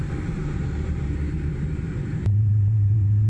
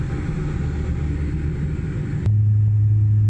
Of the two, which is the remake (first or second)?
first